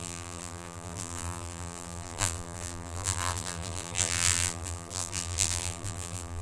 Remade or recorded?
remade